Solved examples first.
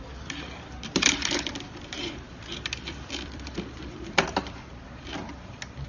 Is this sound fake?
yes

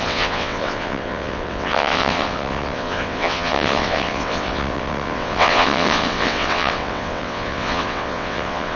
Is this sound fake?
yes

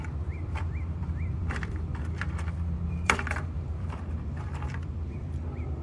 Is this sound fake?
yes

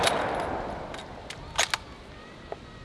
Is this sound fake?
no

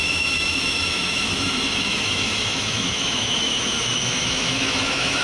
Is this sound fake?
yes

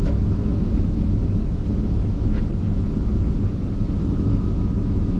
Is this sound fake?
yes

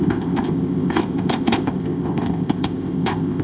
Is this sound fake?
yes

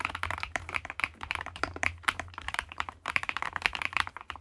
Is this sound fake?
yes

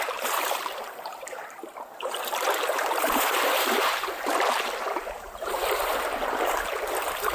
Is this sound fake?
yes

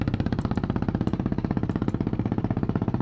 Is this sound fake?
yes